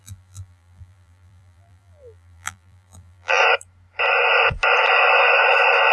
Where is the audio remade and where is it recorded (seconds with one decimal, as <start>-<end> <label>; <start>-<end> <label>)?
0.0-3.4 remade; 3.4-5.9 recorded